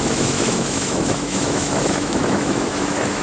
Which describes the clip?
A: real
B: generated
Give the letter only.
B